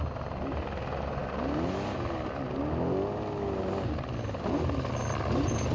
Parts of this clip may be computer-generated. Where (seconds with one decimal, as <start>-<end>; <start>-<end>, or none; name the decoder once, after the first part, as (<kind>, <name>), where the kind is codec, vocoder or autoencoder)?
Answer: none